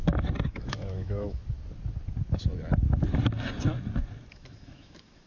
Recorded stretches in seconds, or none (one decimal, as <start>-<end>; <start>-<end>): 0.0-0.5; 1.4-4.3